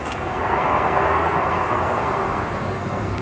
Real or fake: fake